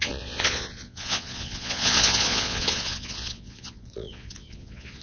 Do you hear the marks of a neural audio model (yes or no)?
yes